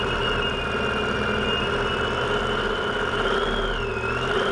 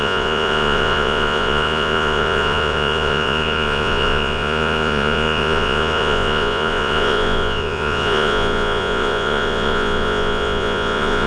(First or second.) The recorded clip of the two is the first